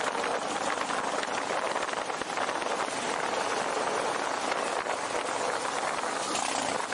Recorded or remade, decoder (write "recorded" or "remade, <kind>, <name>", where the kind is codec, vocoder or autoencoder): recorded